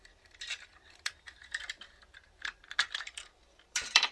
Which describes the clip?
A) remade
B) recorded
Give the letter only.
A